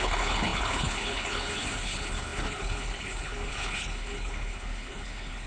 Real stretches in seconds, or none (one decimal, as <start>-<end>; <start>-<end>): none